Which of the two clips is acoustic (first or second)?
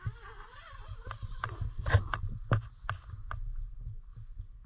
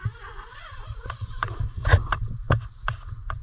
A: first